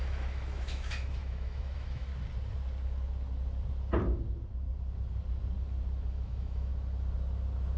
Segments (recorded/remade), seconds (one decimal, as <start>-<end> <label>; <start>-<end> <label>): 0.0-2.1 remade; 2.1-6.1 recorded; 6.1-6.7 remade; 6.7-7.8 recorded